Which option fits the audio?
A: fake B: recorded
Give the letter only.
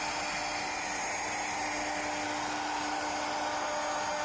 B